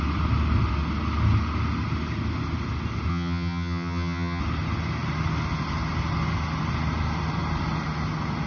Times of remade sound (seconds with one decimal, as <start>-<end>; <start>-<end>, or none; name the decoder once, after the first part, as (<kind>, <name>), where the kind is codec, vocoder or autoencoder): 3.1-4.4 (vocoder, HiFi-GAN)